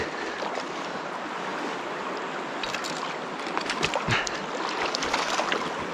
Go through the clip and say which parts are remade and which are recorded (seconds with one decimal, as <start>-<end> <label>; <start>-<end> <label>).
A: 0.0-5.9 recorded